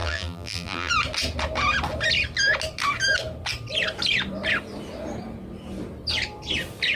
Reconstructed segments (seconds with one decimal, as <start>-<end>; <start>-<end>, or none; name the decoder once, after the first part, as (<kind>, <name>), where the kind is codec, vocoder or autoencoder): 0.0-0.9 (vocoder, BigVGAN v2)